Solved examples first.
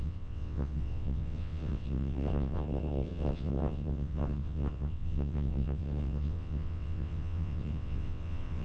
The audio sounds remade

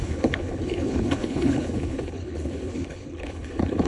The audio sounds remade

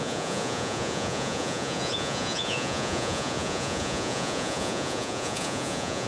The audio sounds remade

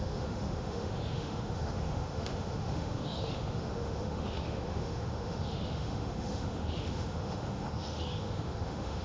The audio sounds remade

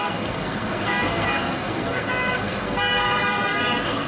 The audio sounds remade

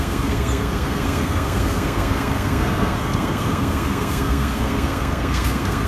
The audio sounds remade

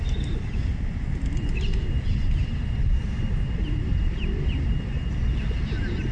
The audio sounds recorded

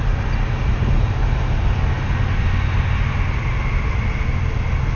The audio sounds recorded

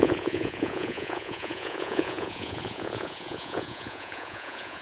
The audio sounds remade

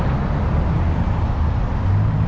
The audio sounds recorded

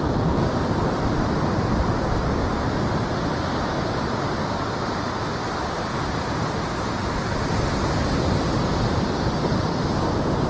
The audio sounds recorded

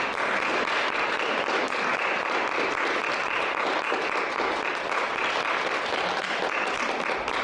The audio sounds remade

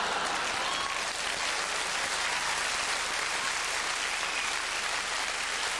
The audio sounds recorded